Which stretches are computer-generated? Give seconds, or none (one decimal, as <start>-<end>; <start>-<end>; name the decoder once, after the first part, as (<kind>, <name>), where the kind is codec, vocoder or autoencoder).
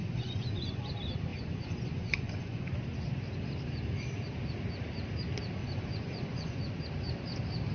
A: 0.0-0.9 (vocoder, Vocos); 1.3-2.6; 5.6-6.7